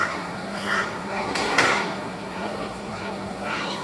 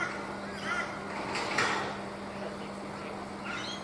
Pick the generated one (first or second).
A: first